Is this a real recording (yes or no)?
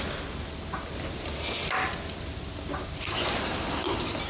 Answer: yes